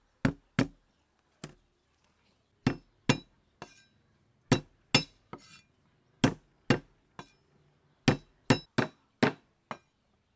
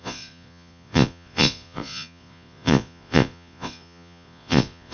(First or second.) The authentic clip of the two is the first